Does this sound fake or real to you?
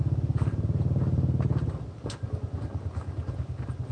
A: real